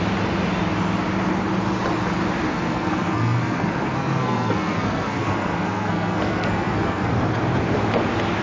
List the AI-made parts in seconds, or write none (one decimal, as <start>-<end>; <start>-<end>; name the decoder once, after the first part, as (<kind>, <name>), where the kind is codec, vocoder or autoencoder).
2.5-7.1 (codec, SNAC)